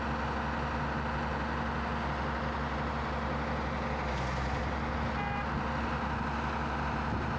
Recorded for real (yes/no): yes